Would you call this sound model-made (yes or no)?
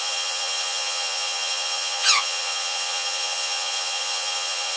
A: yes